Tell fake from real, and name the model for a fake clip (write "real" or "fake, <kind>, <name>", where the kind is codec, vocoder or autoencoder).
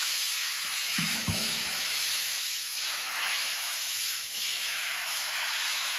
fake, autoencoder, DAC-VAE